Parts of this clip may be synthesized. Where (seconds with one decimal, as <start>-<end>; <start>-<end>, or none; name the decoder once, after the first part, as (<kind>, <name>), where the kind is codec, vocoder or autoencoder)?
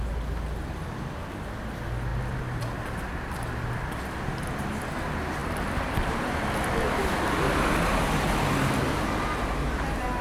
none